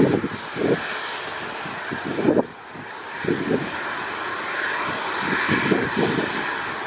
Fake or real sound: real